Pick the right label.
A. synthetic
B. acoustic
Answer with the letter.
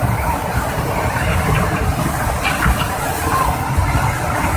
B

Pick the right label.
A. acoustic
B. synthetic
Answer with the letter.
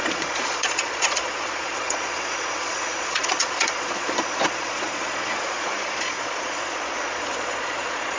B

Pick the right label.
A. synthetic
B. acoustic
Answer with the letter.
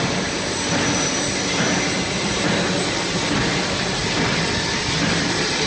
B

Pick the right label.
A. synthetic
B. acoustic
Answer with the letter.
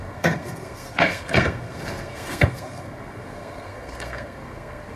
A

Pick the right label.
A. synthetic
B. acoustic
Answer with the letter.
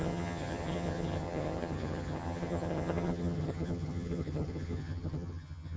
A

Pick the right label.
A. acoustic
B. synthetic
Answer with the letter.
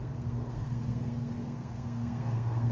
B